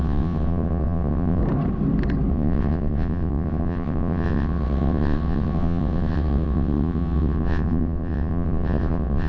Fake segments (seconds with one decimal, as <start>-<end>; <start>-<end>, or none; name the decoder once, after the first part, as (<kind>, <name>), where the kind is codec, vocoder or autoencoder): 0.0-1.4 (vocoder, WaveNeXt); 2.3-9.3